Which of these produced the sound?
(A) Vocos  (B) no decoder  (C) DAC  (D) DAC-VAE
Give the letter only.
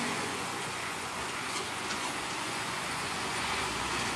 A